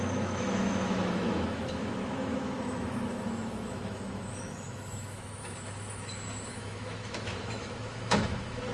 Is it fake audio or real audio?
fake